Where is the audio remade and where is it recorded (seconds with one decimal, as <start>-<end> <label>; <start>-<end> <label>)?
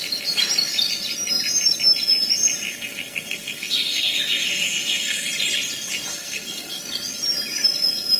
0.0-2.7 recorded; 2.7-5.3 remade; 5.3-6.1 recorded; 6.1-6.8 remade; 6.8-8.2 recorded